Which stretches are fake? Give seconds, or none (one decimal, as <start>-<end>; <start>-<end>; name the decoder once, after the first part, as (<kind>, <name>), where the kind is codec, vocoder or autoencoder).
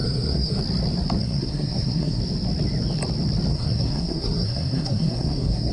0.0-0.6 (codec, SNAC); 1.2-2.2; 3.5-5.7